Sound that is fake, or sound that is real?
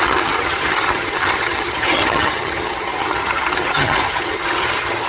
fake